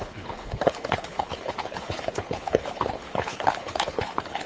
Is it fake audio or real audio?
fake